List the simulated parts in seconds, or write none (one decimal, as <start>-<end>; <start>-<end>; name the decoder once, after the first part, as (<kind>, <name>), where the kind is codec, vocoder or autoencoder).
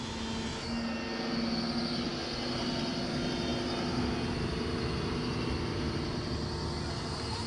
none